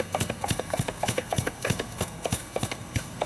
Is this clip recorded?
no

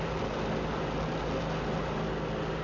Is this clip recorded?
yes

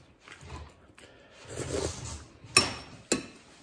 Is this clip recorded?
yes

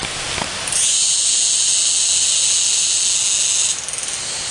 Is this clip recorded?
yes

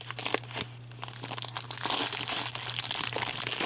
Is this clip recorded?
yes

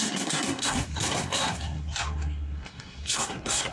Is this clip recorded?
no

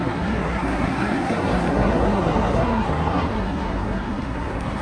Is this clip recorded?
no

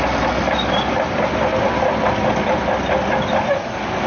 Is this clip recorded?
yes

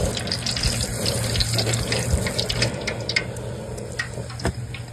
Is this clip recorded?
yes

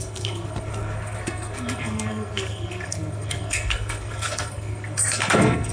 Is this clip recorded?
no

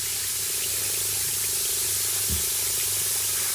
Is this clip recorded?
yes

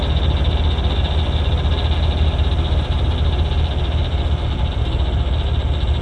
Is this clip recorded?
yes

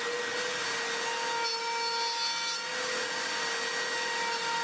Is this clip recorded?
yes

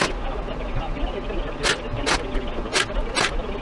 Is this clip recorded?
yes